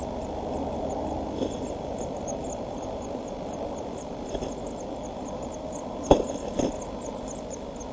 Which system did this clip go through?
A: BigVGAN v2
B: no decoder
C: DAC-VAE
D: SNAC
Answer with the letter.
B